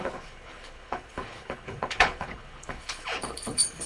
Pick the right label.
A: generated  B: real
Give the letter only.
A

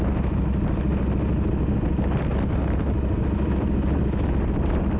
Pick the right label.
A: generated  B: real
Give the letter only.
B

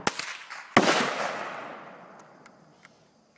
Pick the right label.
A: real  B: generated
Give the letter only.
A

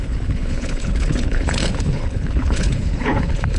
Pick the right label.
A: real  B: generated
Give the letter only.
B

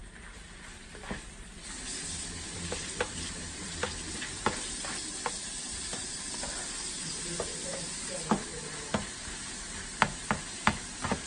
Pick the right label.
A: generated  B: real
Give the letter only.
B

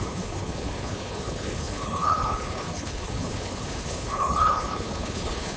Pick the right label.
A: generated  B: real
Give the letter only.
A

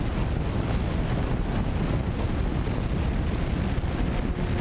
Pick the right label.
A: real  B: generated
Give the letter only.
A